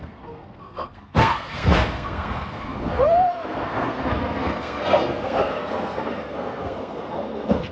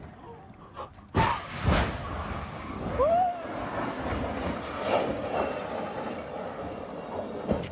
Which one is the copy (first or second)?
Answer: first